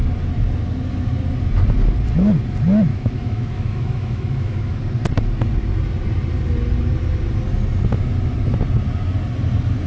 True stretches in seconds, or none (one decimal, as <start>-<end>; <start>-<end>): 0.0-2.9; 4.8-9.9